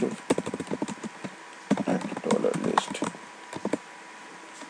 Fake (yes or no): no